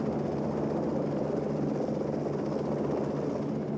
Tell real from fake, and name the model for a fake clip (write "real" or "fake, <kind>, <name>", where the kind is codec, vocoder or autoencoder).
real